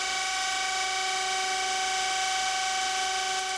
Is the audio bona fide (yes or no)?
yes